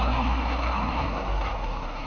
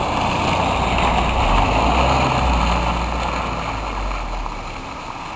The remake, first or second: first